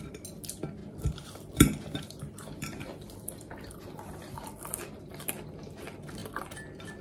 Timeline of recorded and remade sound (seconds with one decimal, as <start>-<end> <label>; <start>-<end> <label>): 0.0-0.8 recorded; 0.8-5.0 remade; 5.0-7.0 recorded

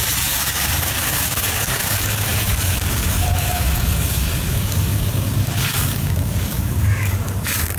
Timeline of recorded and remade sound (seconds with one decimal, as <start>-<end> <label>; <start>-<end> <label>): 0.0-7.8 remade